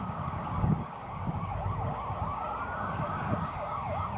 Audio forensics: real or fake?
fake